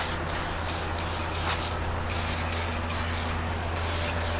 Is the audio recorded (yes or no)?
yes